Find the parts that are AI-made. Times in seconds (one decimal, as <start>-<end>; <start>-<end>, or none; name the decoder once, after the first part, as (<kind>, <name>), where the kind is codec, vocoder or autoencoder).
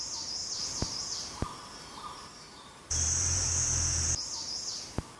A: 0.4-3.5 (vocoder, BigVGAN v2)